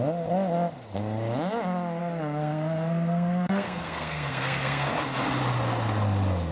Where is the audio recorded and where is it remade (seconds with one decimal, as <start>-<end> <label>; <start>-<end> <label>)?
0.0-2.0 recorded; 2.0-4.9 remade; 4.9-6.5 recorded